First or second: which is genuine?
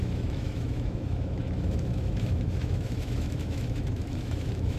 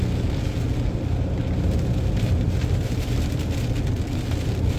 second